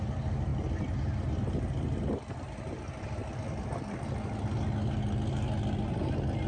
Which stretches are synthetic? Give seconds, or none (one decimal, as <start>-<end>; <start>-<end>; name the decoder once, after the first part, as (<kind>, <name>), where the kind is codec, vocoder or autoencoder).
none